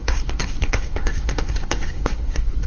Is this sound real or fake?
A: fake